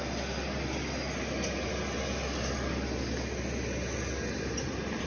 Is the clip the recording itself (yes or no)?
yes